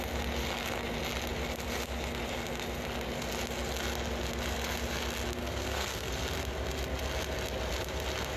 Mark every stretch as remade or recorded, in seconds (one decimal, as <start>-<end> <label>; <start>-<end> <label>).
0.0-5.4 recorded; 5.4-6.1 remade; 6.1-8.4 recorded